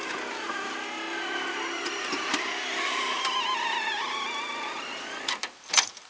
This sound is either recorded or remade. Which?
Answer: recorded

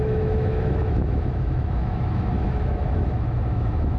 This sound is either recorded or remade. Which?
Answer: remade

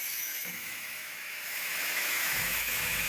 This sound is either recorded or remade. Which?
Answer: remade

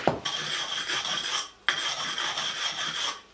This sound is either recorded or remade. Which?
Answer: recorded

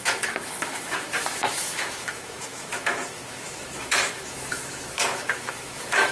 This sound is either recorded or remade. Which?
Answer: remade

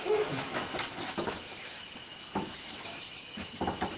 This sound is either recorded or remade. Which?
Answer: remade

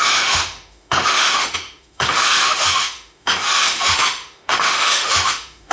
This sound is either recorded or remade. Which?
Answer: remade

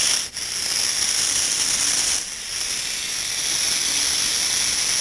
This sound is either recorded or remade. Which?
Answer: recorded